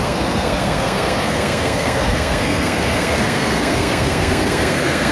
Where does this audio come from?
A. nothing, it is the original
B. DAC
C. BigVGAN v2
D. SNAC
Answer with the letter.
D